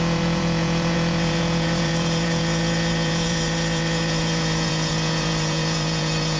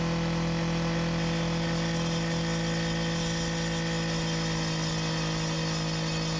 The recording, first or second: second